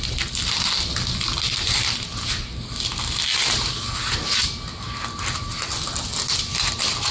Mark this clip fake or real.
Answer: real